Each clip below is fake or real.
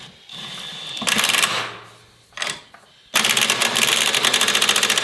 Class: real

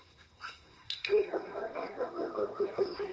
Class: fake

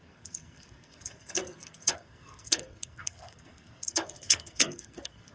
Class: fake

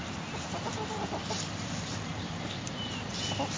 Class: real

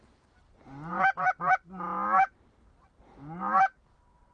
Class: real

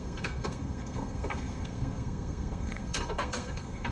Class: fake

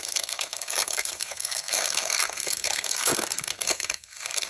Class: fake